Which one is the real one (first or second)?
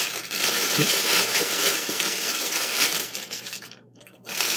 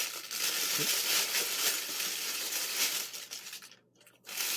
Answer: second